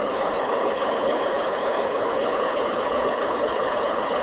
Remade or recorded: remade